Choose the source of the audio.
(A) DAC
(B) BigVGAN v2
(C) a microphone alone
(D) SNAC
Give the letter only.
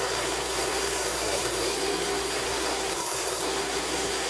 D